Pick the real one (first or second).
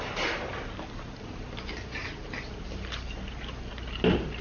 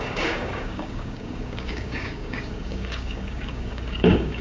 first